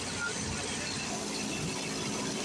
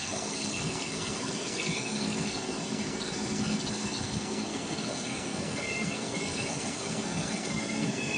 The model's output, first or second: second